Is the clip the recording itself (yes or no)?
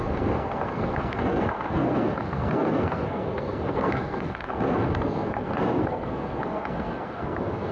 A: no